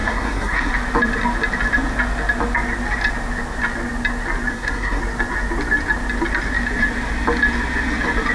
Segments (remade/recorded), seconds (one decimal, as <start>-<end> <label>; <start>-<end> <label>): 0.0-0.7 remade; 0.7-4.5 recorded; 4.5-5.0 remade; 5.0-8.3 recorded